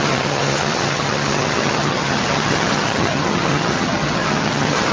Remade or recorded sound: remade